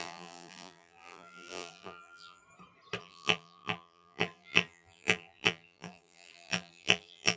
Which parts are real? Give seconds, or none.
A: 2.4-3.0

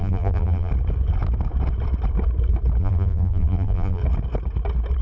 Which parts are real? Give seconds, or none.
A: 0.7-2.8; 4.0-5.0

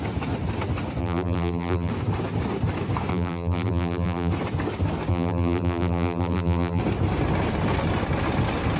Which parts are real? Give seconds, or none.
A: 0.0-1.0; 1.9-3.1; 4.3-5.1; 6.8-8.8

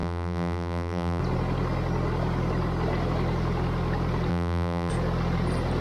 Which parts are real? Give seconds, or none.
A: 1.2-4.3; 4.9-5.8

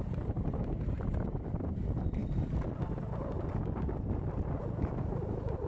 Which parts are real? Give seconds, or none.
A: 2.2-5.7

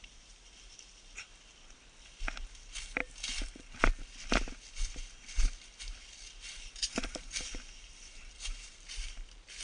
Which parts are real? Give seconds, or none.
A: 1.3-2.5; 3.0-6.6

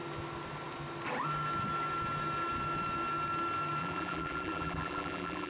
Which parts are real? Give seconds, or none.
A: 0.0-3.8